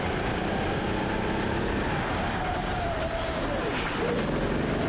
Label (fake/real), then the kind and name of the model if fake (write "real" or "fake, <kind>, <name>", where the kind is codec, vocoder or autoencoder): real